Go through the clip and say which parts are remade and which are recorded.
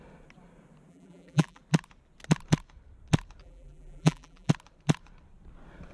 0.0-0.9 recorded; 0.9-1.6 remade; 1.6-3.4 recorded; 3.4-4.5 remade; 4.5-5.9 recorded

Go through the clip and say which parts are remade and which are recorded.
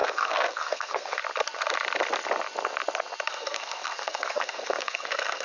0.0-1.2 remade; 1.2-3.3 recorded; 3.3-5.4 remade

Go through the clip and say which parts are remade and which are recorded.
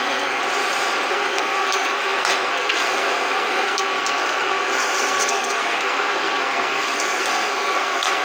0.0-0.4 remade; 0.4-1.1 recorded; 1.1-8.2 remade